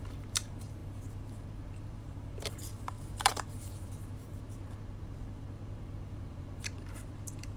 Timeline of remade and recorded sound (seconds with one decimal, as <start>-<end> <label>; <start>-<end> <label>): 0.0-7.6 remade

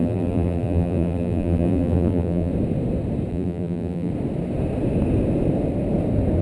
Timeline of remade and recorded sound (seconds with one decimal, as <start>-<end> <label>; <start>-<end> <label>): 0.0-2.5 remade; 2.5-3.3 recorded; 3.3-4.1 remade; 4.1-6.4 recorded

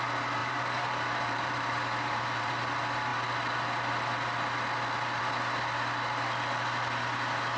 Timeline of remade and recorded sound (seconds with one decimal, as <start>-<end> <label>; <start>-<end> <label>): 0.0-0.4 recorded; 0.4-2.5 remade; 2.5-7.6 recorded

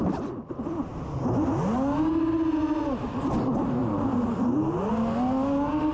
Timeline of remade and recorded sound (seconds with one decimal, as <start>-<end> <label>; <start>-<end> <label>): 0.0-3.8 recorded; 3.8-4.9 remade; 4.9-5.9 recorded

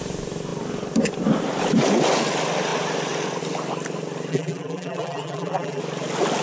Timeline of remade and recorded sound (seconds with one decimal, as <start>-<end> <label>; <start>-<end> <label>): 0.0-4.3 recorded; 4.3-5.8 remade; 5.8-6.4 recorded

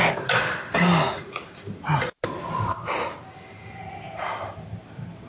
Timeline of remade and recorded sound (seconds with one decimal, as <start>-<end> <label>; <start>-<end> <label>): 0.0-5.3 remade

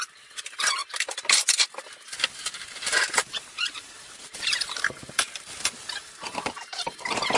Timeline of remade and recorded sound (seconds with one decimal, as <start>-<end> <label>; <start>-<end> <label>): 0.0-0.8 remade; 0.8-2.4 recorded; 2.4-7.4 remade

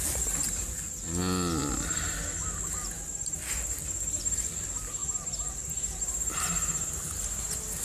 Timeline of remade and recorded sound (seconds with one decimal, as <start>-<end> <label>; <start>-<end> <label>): 0.0-7.8 recorded